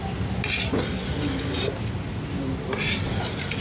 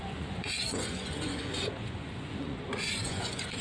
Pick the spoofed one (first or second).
second